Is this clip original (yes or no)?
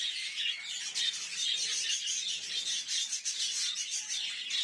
yes